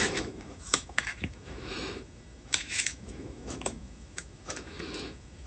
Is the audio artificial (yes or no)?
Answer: yes